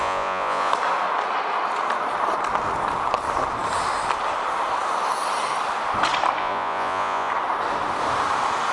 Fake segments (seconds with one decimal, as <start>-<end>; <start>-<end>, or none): 0.0-0.7; 6.4-7.3